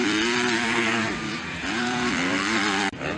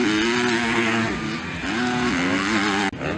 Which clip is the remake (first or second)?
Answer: first